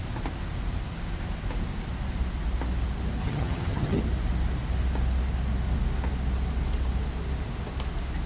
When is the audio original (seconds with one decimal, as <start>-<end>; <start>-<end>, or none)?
0.0-3.2; 4.0-8.3